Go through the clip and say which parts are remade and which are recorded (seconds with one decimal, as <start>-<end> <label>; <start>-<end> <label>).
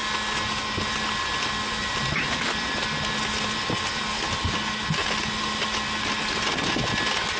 0.0-7.4 recorded